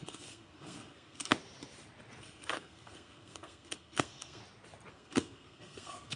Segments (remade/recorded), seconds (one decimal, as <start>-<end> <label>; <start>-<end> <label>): 0.0-1.3 remade; 1.3-2.2 recorded; 2.2-4.4 remade; 4.4-4.9 recorded; 4.9-6.2 remade